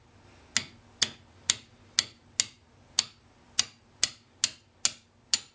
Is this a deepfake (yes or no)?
no